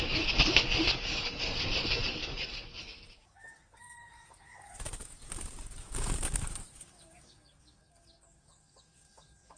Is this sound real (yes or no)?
no